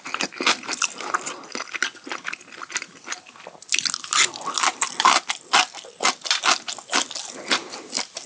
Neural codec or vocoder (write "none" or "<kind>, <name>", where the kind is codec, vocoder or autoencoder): none